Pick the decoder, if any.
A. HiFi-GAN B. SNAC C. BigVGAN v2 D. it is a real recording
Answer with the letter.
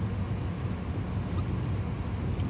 D